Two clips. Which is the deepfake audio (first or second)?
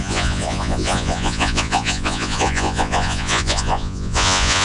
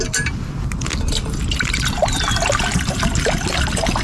first